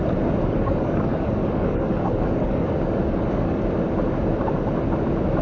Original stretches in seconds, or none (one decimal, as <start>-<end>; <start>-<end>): 0.0-0.4; 3.6-5.4